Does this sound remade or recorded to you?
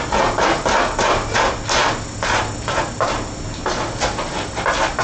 recorded